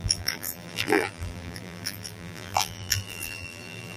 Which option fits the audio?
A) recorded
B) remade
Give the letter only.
B